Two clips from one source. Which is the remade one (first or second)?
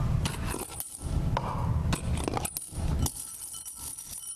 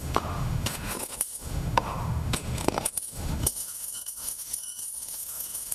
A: second